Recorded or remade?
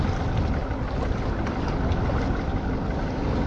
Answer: recorded